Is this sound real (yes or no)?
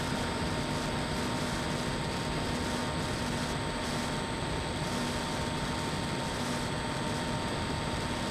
yes